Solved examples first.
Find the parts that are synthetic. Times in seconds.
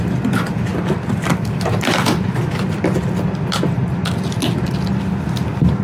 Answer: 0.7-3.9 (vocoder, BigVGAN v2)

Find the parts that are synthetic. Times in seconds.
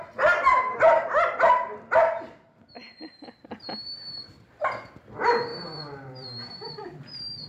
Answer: 5.5-7.0 (vocoder, BigVGAN v2)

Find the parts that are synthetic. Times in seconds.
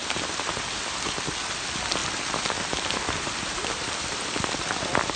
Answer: 0.0-0.6 (vocoder, BigVGAN v2); 2.0-5.2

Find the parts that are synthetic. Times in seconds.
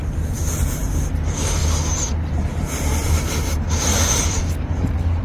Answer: 2.5-5.2 (vocoder, BigVGAN v2)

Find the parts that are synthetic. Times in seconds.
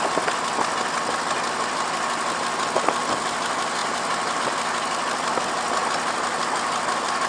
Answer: none